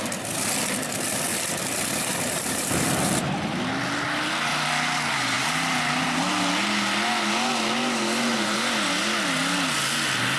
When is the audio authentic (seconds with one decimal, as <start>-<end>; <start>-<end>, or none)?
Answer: 0.0-1.3; 3.6-4.5; 6.2-8.3; 8.9-10.4